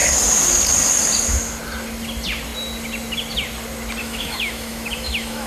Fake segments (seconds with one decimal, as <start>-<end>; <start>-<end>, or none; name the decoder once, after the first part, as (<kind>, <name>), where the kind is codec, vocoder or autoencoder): 4.0-5.5 (autoencoder, DAC-VAE)